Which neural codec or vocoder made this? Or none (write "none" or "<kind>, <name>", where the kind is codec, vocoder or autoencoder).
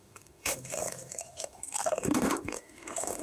autoencoder, DAC-VAE